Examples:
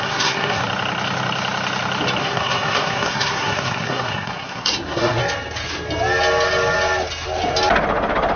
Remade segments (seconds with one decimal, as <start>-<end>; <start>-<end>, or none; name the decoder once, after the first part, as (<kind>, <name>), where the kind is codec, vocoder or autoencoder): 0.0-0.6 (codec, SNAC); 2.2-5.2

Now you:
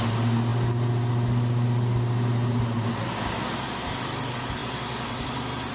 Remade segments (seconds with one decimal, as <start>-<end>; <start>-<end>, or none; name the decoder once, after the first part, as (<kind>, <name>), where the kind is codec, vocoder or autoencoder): none

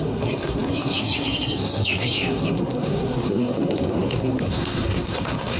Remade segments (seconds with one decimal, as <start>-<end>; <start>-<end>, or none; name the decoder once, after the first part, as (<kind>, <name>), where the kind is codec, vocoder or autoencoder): 0.0-5.6 (codec, SNAC)

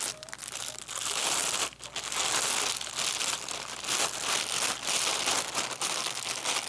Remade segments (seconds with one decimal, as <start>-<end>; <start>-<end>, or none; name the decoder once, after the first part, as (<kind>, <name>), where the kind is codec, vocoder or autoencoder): none